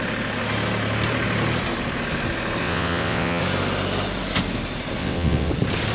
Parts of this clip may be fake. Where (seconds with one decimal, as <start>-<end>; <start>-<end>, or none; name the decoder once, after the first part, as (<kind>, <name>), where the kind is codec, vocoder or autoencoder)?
2.6-3.4 (vocoder, WaveNeXt); 5.0-5.5